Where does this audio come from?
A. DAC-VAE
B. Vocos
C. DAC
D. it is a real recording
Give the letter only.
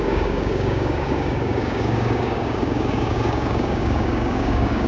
C